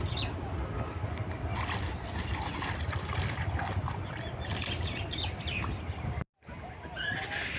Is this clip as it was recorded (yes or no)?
yes